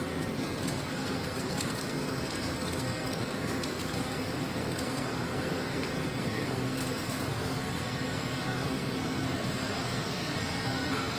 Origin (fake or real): fake